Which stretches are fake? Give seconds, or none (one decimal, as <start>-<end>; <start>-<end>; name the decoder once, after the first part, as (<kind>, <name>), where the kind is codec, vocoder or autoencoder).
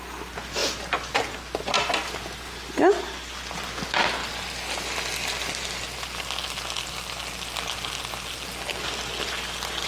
none